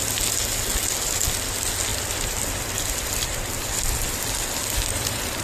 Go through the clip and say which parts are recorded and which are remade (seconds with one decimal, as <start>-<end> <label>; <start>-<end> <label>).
0.0-1.9 recorded; 1.9-5.4 remade